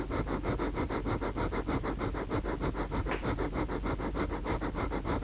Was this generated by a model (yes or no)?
no